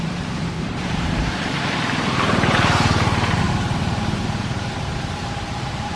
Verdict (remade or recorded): remade